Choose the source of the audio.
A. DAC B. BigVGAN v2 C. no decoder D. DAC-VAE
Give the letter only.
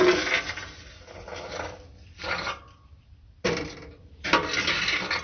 C